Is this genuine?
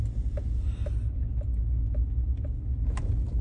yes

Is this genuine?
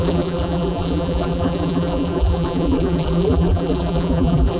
no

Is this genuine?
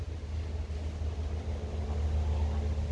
yes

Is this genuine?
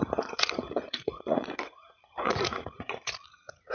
no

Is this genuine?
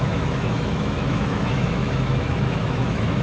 no